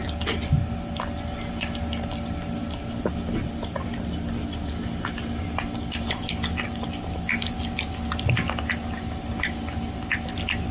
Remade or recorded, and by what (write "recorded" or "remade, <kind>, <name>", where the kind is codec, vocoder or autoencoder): recorded